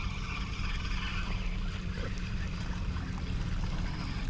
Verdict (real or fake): real